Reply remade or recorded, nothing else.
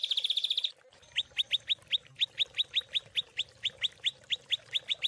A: recorded